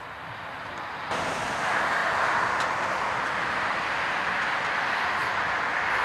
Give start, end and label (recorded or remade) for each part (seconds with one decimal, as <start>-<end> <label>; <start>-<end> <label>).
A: 0.0-6.0 recorded